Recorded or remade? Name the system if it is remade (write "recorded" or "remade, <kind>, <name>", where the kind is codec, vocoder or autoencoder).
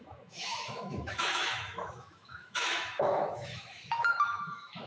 remade, autoencoder, DAC-VAE